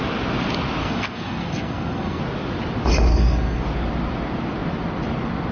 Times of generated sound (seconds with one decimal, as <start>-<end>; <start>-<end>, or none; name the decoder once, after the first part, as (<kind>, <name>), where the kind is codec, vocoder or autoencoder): 0.8-2.2 (codec, SNAC); 3.1-3.6